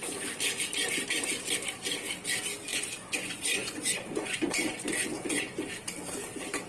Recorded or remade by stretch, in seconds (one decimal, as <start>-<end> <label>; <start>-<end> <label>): 0.0-2.7 recorded; 2.7-5.5 remade; 5.5-6.7 recorded